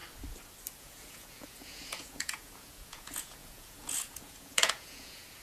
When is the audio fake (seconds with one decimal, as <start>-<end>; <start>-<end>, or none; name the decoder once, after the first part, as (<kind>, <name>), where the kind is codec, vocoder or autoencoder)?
0.8-5.4 (vocoder, Vocos)